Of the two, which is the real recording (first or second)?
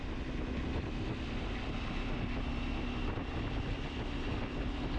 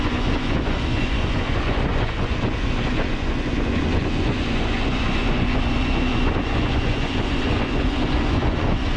first